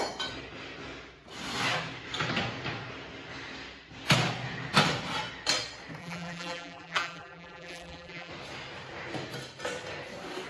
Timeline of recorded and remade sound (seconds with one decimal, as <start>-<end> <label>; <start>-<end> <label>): 0.0-6.0 recorded; 6.0-8.3 remade; 8.3-10.5 recorded